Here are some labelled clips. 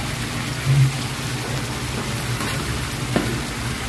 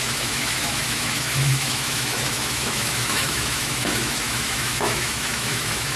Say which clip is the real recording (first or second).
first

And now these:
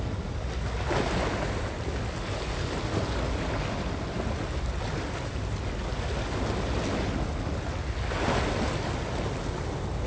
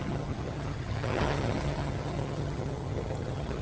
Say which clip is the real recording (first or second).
first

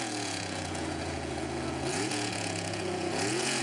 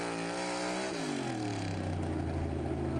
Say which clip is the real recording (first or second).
second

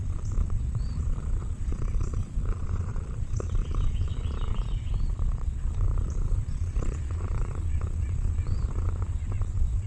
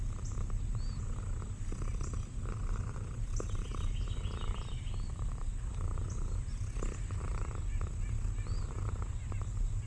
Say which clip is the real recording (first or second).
second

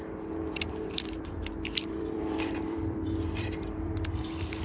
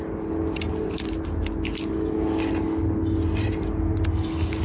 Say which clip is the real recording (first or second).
second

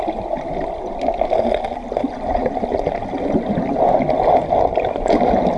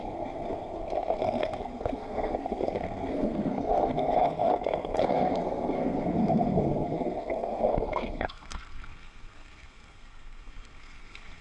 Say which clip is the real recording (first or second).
first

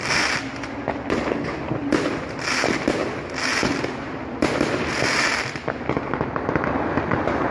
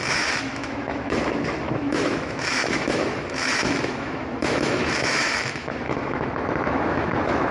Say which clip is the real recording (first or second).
first